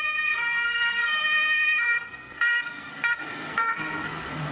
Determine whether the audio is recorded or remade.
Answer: remade